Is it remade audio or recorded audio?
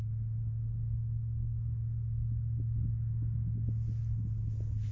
recorded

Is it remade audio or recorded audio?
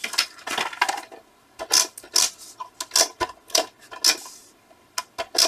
recorded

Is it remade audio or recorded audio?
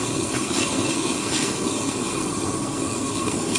remade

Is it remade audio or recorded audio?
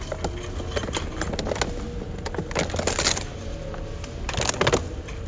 recorded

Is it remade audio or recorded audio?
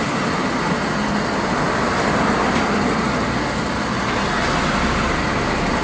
recorded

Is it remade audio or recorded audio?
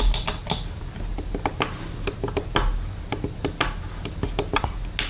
recorded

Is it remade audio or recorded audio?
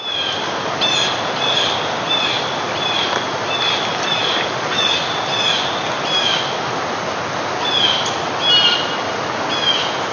recorded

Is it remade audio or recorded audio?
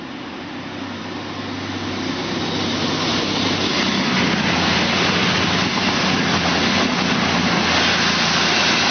recorded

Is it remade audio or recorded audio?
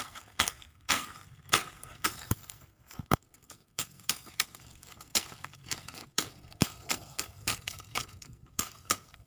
remade